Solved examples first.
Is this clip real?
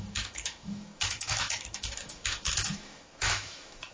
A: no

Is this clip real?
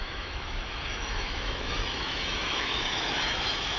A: no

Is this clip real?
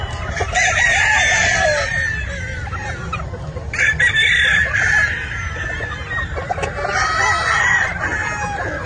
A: yes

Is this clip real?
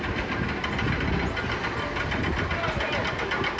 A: yes